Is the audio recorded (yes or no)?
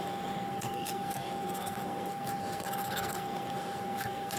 no